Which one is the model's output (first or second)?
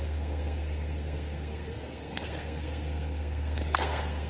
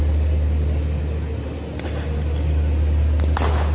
first